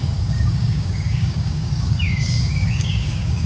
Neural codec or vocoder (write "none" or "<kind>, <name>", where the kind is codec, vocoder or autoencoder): codec, DAC